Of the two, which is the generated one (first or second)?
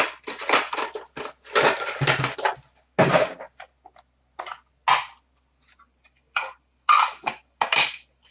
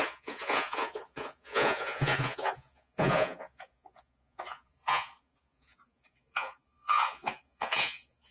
second